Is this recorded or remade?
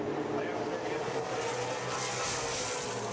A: recorded